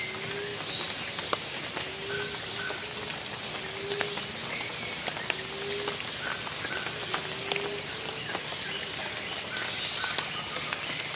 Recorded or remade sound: recorded